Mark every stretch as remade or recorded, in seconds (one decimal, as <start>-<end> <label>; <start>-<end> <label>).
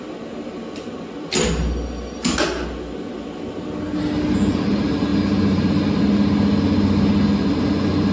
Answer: 0.0-8.1 recorded